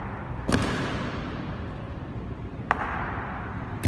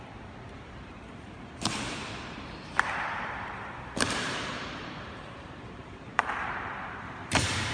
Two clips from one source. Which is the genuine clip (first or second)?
first